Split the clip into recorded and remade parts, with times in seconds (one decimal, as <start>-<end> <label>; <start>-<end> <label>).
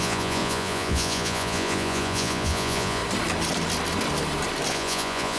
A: 0.0-3.0 remade; 3.0-4.7 recorded; 4.7-5.4 remade